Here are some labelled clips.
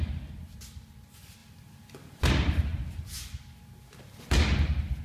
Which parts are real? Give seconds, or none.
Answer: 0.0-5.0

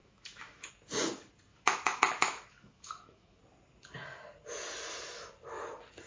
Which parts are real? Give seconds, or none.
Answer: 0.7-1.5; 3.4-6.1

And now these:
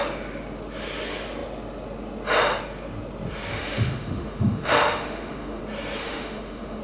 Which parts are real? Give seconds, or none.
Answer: 0.0-3.5; 5.6-6.0